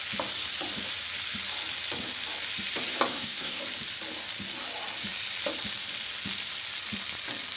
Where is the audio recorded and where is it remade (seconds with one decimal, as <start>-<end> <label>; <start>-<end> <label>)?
0.0-3.1 recorded; 3.1-3.6 remade; 3.6-7.6 recorded